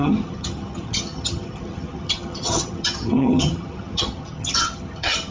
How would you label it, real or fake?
fake